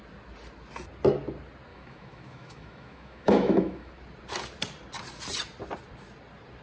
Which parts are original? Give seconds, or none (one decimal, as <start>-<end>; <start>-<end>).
0.0-1.7; 3.9-6.6